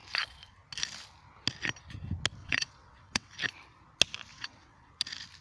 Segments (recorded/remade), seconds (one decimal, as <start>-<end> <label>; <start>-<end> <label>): 0.0-2.4 recorded; 2.4-3.3 remade; 3.3-4.3 recorded; 4.3-4.9 remade; 4.9-5.4 recorded